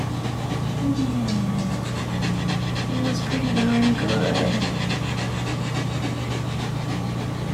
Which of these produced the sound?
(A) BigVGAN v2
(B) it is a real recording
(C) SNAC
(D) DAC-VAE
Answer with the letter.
B